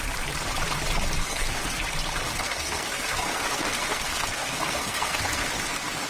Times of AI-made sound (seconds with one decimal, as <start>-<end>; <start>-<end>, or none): 1.2-1.8; 2.3-6.1